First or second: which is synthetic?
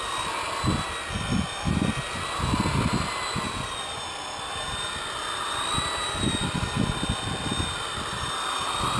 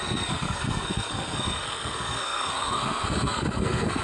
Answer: second